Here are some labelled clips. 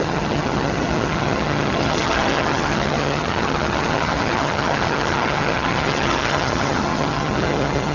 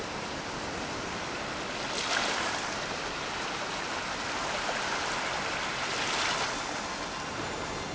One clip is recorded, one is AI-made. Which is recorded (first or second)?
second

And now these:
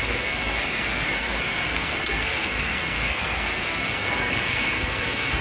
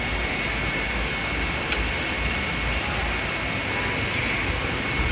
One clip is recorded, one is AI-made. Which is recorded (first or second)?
second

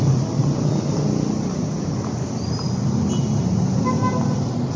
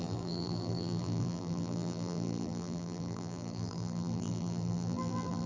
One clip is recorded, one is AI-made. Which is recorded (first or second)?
first